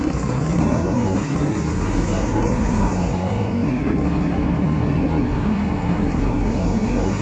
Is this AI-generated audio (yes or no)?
yes